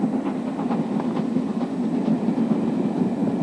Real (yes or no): yes